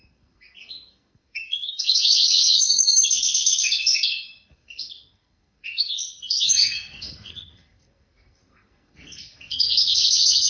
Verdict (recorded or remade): remade